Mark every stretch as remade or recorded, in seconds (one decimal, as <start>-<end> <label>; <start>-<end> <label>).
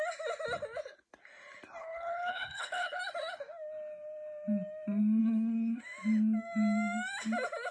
0.0-1.8 recorded; 1.8-3.0 remade; 3.0-5.2 recorded; 5.2-5.8 remade; 5.8-7.7 recorded